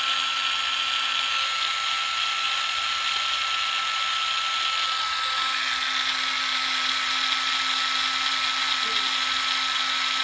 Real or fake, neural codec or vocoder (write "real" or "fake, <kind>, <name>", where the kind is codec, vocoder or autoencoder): real